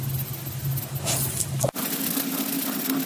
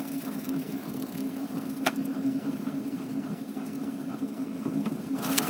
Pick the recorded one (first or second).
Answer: first